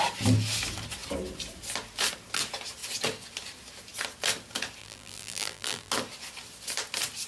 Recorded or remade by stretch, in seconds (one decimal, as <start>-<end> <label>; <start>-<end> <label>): 0.0-4.8 recorded; 4.8-5.9 remade; 5.9-7.3 recorded